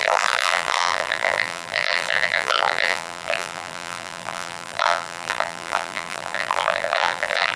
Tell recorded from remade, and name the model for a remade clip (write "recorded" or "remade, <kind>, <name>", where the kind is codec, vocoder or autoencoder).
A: remade, vocoder, BigVGAN v2